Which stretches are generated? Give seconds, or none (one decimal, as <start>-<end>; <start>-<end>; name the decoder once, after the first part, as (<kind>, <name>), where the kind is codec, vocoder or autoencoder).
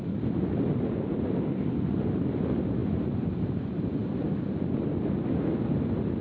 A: none